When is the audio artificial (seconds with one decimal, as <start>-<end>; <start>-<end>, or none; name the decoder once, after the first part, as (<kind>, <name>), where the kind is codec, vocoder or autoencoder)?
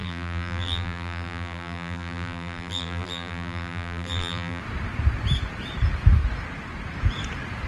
0.0-4.6 (vocoder, BigVGAN v2)